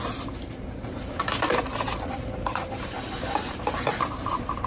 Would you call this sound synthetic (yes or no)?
yes